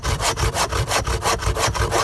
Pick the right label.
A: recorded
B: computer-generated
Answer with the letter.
A